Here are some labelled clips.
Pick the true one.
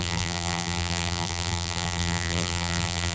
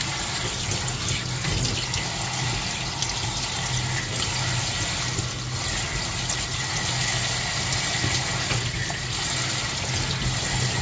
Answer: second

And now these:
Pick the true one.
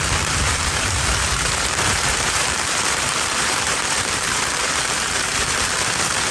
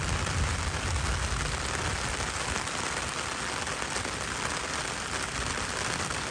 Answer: second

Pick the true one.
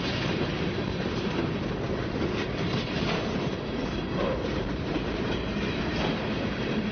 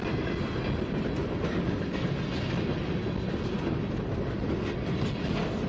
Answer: second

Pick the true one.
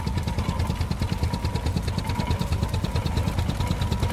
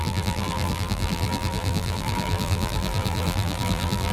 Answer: first